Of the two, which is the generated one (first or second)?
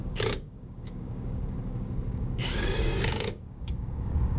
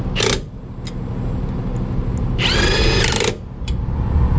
first